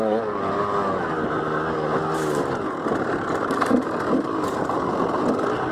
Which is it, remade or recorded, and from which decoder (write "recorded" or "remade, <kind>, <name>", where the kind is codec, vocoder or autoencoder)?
recorded